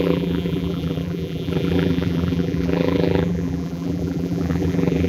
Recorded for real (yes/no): no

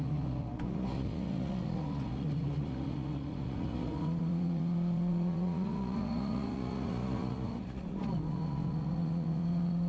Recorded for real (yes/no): no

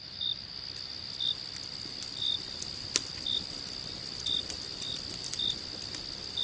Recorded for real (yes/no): yes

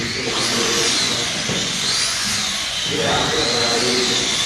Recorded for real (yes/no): no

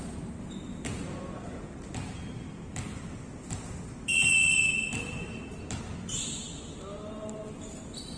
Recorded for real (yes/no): yes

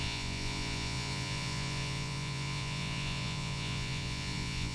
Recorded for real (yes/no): no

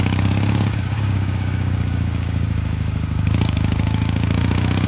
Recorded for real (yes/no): no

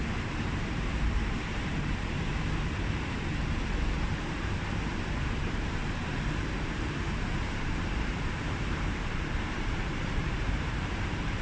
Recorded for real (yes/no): no